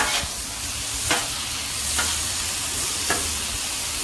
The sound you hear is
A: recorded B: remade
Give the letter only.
A